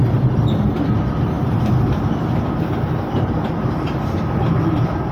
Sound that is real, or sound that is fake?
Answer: real